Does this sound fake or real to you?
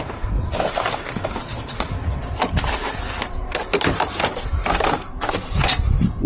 real